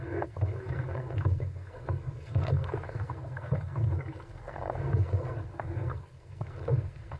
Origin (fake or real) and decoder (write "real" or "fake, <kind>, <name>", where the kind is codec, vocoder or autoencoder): fake, codec, SNAC